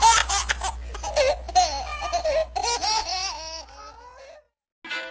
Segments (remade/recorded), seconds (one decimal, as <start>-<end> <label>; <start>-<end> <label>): 0.0-5.1 recorded